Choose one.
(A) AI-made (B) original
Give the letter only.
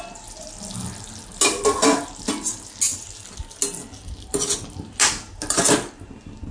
B